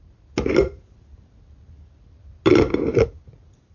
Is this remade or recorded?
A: recorded